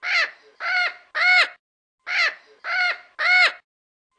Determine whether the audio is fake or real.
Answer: real